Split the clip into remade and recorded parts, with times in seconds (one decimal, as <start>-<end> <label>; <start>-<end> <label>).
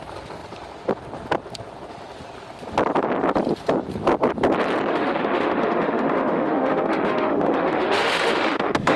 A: 0.0-4.9 recorded; 4.9-9.0 remade